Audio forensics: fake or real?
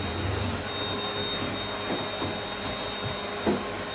real